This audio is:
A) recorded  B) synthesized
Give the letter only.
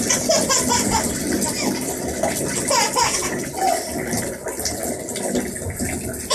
A